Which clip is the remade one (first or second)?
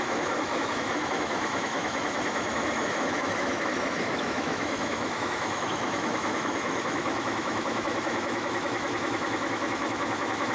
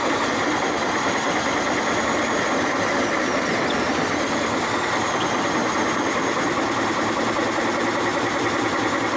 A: first